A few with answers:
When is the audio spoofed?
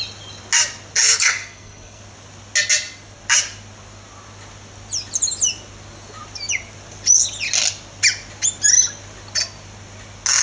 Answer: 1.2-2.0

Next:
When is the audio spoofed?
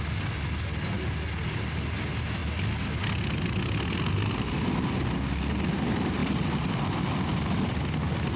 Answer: none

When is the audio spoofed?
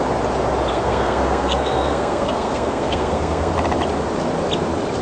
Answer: 0.7-3.5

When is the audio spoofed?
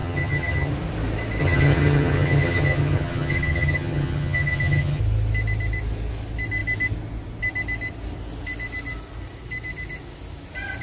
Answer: 0.0-0.7; 1.4-5.0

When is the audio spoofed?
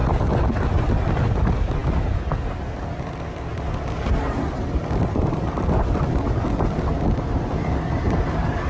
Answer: none